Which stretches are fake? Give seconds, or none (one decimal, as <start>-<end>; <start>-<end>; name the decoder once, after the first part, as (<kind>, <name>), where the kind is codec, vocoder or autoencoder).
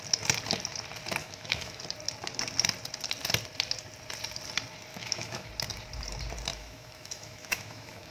1.2-1.8 (autoencoder, DAC-VAE); 4.9-5.5; 6.5-8.1